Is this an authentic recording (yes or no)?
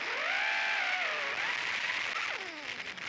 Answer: yes